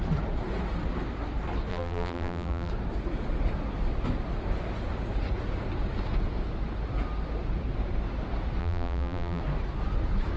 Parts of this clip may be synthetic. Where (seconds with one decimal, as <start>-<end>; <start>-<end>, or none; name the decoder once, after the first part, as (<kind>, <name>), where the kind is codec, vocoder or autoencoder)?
1.7-2.7 (vocoder, BigVGAN v2); 8.6-9.4